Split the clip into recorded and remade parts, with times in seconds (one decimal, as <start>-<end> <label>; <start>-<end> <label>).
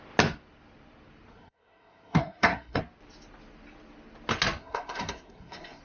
0.0-1.3 recorded; 1.3-2.8 remade; 2.8-4.6 recorded; 4.6-5.8 remade